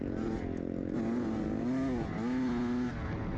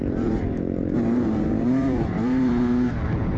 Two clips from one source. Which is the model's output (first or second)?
second